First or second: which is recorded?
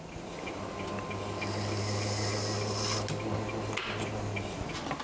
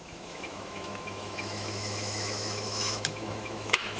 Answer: first